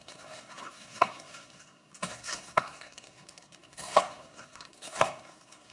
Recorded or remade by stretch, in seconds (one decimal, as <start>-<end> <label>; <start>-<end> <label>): 0.0-5.7 remade